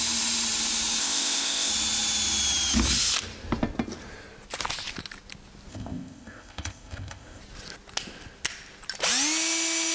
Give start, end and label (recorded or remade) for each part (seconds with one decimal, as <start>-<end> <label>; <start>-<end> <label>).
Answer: 0.0-1.0 recorded; 1.0-1.7 remade; 1.7-5.7 recorded; 5.7-7.4 remade; 7.4-9.9 recorded